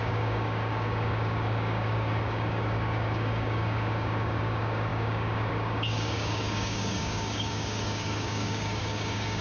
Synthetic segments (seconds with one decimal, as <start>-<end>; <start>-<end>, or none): 0.0-9.4